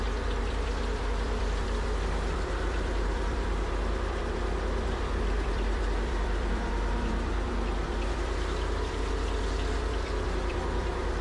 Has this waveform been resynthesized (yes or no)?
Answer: yes